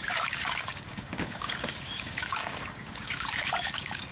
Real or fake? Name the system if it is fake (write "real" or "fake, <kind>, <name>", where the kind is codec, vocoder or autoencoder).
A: fake, codec, DAC